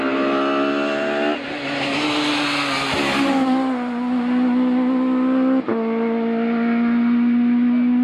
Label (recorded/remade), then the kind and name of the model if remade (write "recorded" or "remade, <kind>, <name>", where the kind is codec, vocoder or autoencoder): recorded